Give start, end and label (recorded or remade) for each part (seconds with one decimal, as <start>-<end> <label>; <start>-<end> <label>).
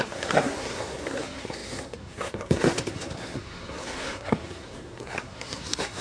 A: 0.0-6.0 remade